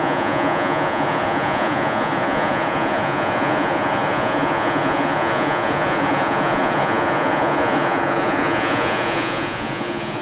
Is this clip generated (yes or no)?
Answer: yes